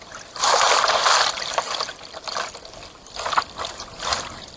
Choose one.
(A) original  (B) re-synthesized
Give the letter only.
B